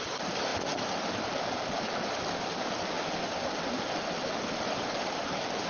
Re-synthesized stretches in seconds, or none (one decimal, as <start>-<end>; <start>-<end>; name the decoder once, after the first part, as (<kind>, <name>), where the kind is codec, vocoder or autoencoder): none